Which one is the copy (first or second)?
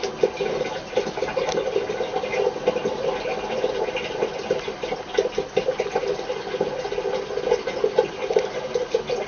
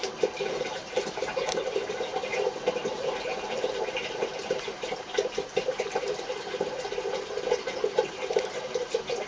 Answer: second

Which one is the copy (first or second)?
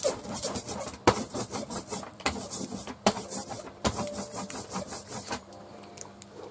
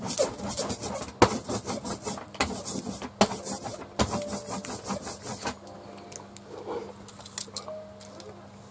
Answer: first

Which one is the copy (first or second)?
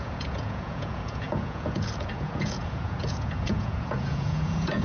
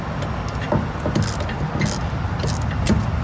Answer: first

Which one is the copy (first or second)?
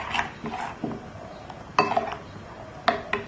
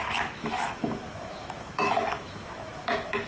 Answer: second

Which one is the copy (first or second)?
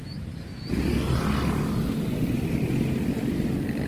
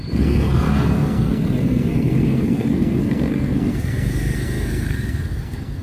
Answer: second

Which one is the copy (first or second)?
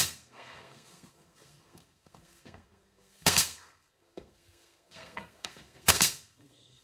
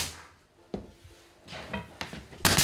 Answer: first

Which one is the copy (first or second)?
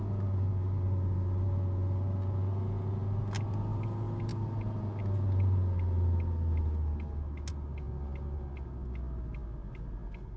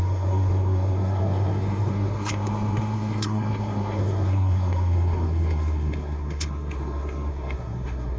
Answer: second